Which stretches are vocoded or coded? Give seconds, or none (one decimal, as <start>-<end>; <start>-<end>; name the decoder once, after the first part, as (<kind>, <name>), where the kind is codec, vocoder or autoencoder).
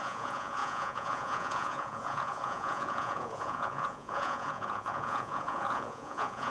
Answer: 0.0-6.5 (vocoder, Vocos)